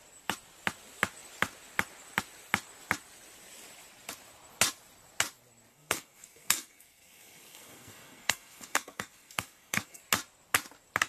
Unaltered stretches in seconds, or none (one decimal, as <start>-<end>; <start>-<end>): 0.0-5.7; 10.0-11.1